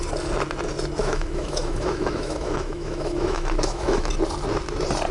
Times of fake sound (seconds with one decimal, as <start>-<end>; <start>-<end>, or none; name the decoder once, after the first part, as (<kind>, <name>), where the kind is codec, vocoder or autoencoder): 1.0-4.1 (autoencoder, DAC-VAE)